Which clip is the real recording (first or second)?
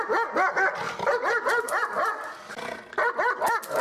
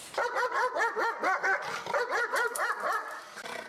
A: first